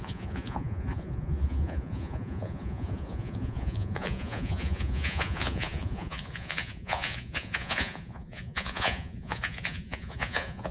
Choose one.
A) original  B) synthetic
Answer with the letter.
B